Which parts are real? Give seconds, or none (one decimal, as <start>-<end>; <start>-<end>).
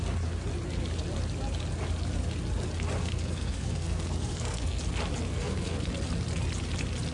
0.0-3.0; 4.8-5.3; 5.9-7.1